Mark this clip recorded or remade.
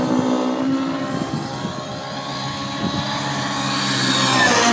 recorded